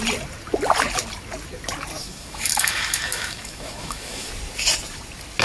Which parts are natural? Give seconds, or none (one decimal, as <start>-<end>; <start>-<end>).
0.0-2.0; 4.3-5.4